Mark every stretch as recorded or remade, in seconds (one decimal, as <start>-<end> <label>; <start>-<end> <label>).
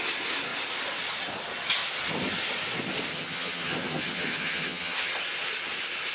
0.0-3.1 recorded; 3.1-5.1 remade; 5.1-6.1 recorded